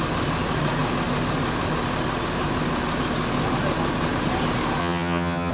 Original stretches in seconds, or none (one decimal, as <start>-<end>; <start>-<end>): 0.0-4.8